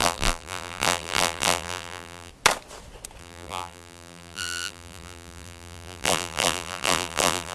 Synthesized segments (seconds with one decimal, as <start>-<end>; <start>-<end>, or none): 0.0-2.3; 3.2-7.5